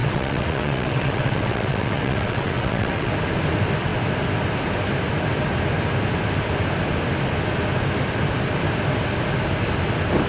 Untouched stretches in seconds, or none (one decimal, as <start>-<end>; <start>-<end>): 3.1-10.3